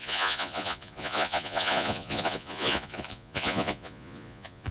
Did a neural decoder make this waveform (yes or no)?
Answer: yes